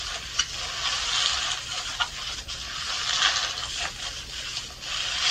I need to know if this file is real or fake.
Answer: real